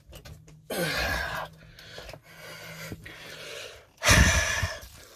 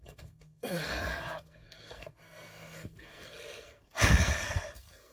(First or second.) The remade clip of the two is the second